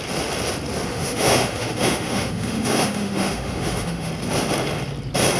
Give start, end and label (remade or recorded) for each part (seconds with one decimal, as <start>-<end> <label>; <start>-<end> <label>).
0.0-0.9 recorded; 0.9-4.1 remade; 4.1-5.4 recorded